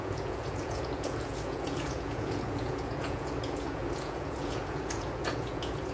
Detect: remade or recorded remade